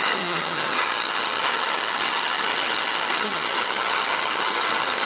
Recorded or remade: remade